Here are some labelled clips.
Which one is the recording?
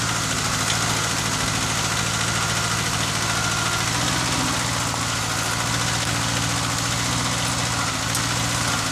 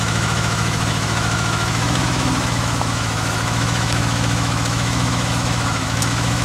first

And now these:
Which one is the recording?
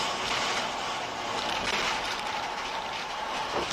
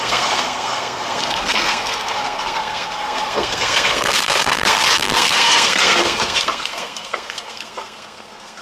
first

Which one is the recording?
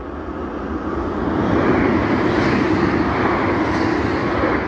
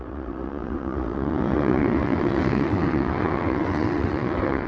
first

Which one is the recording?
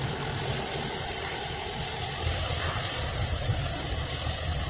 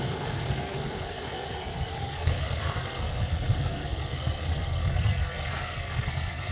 first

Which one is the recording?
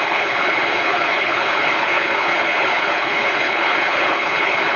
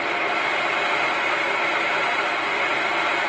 second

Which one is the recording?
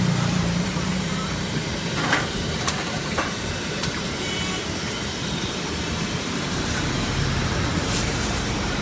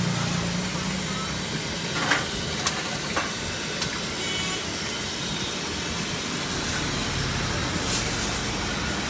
second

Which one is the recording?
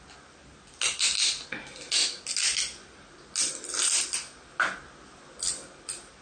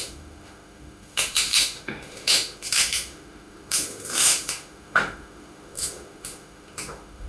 first